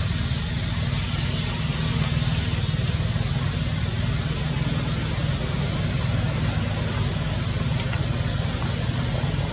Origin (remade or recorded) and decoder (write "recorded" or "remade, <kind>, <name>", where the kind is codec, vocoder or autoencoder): recorded